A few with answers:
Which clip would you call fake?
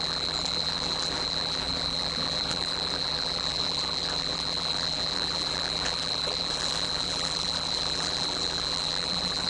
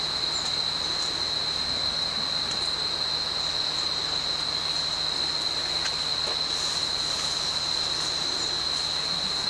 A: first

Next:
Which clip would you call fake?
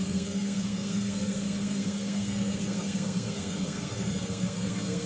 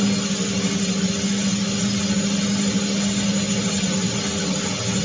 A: first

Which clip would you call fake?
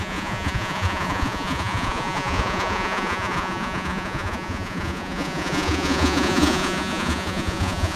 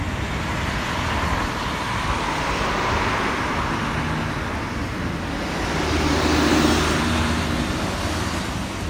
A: first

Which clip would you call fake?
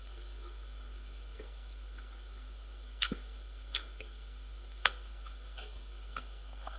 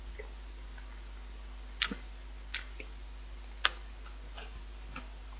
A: first